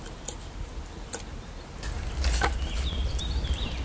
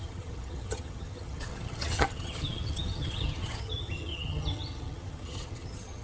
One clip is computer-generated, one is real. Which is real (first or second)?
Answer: first